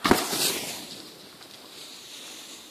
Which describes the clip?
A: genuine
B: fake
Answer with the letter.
A